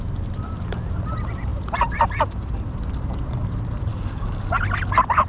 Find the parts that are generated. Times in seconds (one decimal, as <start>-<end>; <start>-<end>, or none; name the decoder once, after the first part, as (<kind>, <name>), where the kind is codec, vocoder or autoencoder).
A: 3.9-4.5 (codec, DAC)